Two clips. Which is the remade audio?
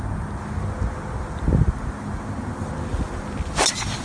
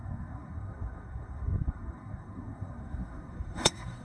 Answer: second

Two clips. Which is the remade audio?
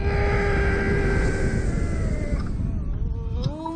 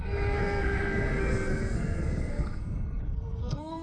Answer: second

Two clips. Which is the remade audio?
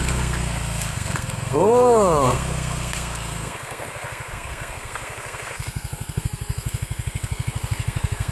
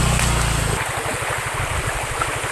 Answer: first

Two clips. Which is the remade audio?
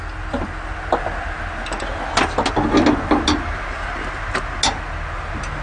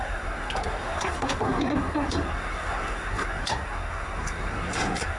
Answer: second